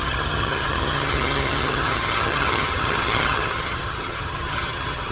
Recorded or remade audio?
remade